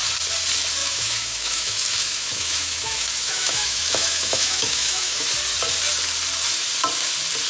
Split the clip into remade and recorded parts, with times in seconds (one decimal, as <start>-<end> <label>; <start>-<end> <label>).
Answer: 0.0-0.8 recorded; 0.8-5.3 remade; 5.3-7.5 recorded